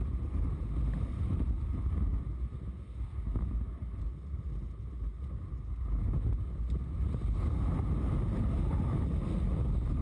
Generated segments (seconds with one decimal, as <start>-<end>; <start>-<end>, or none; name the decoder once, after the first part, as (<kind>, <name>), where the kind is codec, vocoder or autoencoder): none

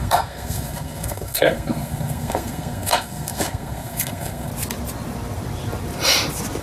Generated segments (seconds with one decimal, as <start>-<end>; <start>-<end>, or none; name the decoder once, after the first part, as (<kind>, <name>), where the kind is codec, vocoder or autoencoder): 0.0-4.5 (codec, SNAC)

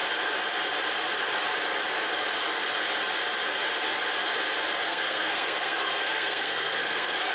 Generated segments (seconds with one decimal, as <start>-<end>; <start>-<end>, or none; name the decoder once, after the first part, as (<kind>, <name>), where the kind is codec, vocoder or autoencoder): 4.9-7.3 (codec, SNAC)

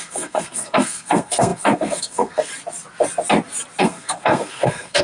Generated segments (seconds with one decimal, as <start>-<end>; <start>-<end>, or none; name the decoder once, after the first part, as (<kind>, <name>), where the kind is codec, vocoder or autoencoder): 0.0-2.5 (codec, SNAC); 3.8-5.0

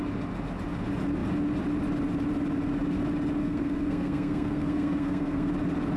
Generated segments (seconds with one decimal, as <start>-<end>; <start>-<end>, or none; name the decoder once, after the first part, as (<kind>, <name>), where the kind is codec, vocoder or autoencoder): 3.4-5.5 (codec, SNAC)

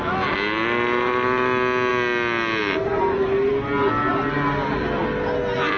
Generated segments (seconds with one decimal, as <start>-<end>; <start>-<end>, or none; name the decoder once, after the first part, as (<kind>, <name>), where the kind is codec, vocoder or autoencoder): none

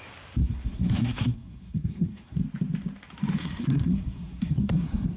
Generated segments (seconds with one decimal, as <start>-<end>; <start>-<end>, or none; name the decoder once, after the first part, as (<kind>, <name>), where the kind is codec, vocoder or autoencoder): 0.4-2.4 (codec, SNAC); 3.4-5.2